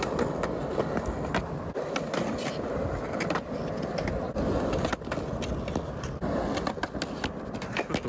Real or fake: real